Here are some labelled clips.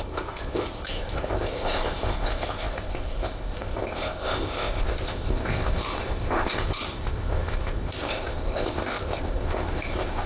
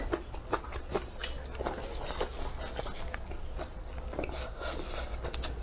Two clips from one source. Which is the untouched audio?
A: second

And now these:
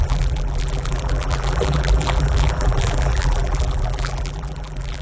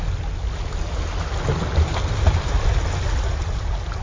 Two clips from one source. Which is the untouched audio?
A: second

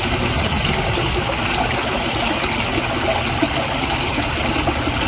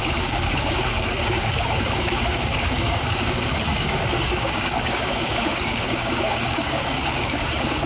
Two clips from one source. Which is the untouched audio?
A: first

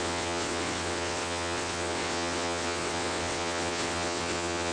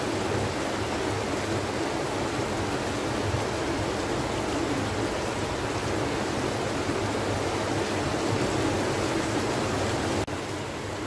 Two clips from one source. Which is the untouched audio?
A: second